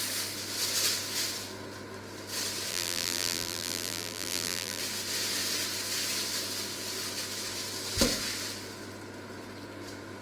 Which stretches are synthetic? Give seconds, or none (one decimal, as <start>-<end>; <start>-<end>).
2.7-4.8